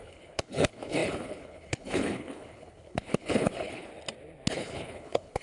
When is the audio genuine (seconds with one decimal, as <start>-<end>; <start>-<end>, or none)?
3.9-4.5